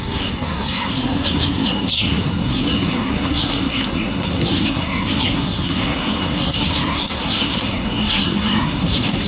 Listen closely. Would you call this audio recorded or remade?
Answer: remade